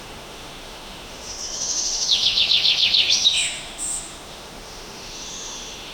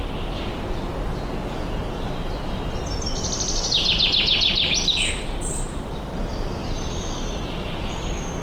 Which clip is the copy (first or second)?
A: first